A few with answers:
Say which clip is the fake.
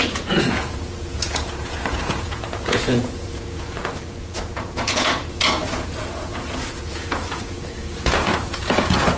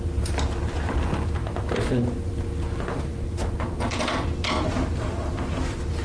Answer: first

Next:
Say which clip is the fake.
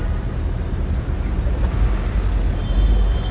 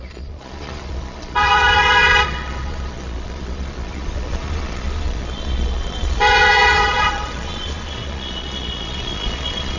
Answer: second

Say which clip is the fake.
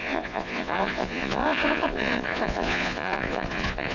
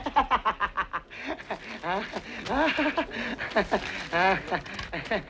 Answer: first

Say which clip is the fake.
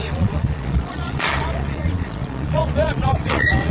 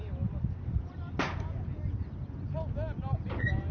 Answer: first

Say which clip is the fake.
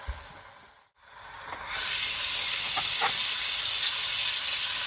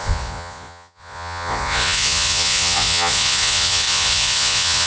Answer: second